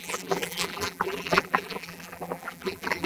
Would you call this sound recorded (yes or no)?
no